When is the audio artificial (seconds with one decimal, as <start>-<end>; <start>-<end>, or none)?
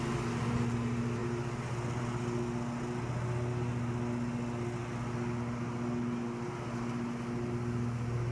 none